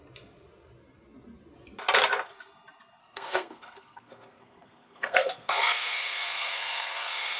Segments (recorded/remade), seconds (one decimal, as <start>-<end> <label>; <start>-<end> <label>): 0.0-3.0 recorded; 3.0-7.4 remade